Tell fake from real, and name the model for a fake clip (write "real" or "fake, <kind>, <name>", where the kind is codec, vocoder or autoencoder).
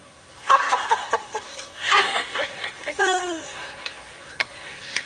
fake, codec, SNAC